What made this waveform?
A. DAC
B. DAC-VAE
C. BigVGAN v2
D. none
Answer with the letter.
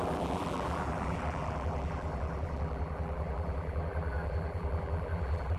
C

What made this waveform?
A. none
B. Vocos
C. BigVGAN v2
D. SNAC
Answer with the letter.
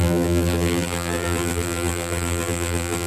C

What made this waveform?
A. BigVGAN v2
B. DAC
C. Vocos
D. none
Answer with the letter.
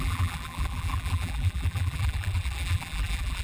A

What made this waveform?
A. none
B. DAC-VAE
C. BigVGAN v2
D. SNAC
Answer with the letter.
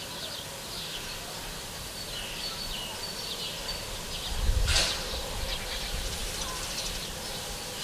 A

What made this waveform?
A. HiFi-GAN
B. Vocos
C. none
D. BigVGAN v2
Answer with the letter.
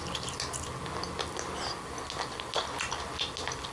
C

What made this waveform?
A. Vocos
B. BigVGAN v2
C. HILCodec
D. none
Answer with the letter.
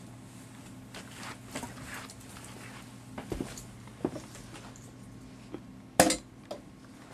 D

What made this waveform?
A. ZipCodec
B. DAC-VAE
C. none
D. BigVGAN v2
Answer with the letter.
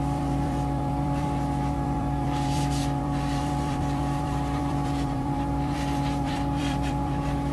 D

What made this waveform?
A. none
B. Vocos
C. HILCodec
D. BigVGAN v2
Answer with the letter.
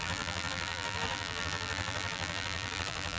D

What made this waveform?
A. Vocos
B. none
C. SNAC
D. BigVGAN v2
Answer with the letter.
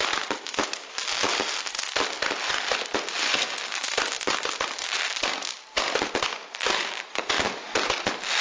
B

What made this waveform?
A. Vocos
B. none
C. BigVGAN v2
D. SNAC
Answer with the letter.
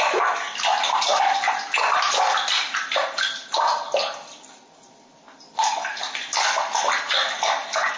B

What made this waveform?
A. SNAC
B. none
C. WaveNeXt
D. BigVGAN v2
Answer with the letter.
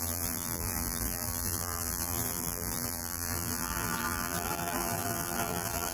D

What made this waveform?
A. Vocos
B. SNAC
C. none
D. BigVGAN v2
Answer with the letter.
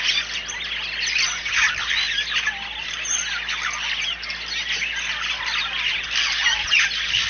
C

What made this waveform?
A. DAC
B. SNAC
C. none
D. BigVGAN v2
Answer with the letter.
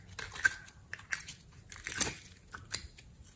C